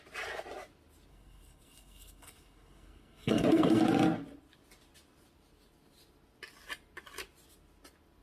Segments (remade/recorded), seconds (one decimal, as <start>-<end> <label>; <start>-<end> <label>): 0.0-1.1 recorded; 1.1-3.8 remade; 3.8-8.2 recorded